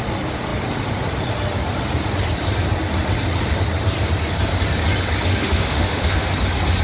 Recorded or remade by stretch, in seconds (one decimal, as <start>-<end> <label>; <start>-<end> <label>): 0.0-5.3 recorded; 5.3-6.3 remade; 6.3-6.8 recorded